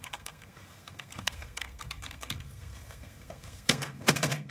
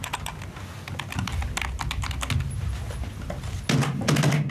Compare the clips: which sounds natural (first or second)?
second